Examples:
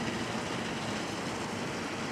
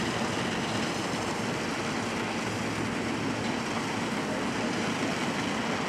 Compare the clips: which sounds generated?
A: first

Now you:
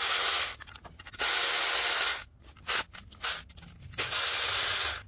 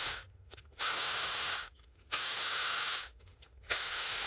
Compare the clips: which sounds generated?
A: second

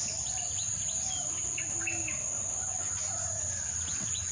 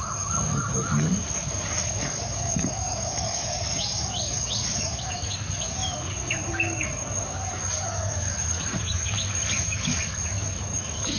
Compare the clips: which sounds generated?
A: second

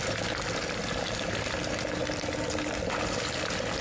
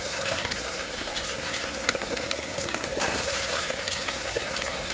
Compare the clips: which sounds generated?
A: second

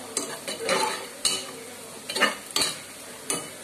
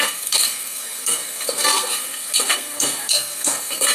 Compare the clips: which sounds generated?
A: second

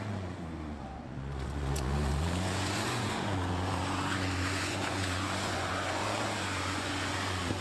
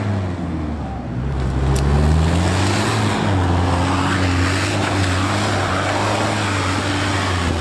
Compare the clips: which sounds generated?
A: first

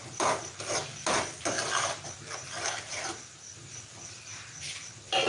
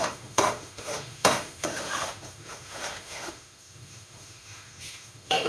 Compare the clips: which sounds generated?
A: second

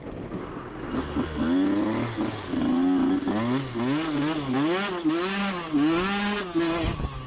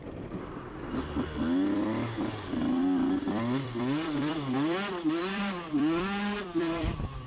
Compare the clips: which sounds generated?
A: second